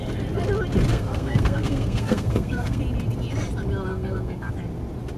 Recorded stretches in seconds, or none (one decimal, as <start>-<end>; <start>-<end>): 0.0-0.9; 2.8-3.9; 4.5-5.2